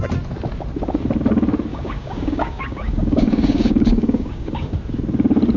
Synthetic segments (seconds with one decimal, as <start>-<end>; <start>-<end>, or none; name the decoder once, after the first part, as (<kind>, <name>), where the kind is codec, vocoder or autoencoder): 1.7-4.7 (codec, DAC)